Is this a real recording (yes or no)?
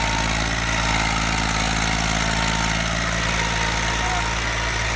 yes